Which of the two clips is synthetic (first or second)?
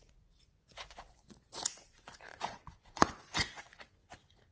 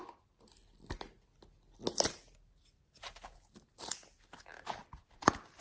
first